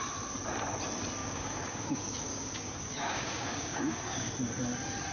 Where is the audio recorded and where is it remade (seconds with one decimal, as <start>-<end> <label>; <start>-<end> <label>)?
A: 0.0-1.2 recorded; 1.2-4.3 remade; 4.3-5.1 recorded